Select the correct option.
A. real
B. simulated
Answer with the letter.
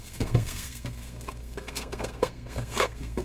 B